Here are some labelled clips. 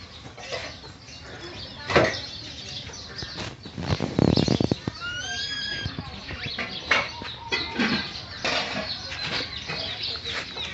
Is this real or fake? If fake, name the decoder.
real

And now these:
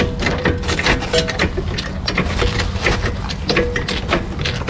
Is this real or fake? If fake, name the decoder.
real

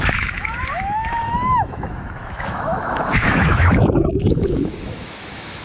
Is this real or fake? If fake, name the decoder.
fake, autoencoder, DAC-VAE